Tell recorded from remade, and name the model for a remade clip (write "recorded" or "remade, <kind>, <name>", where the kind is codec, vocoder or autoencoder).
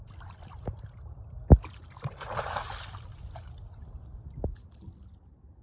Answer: recorded